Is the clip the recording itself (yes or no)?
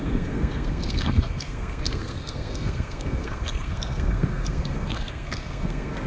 no